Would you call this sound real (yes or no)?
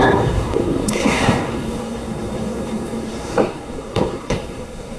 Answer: no